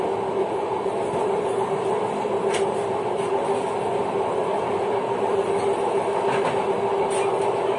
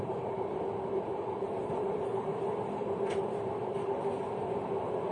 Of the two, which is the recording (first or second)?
first